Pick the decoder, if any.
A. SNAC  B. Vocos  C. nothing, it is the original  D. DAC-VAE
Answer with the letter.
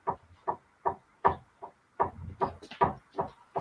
C